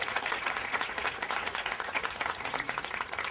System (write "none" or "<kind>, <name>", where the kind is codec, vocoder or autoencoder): vocoder, Vocos